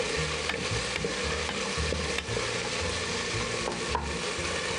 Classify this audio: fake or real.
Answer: real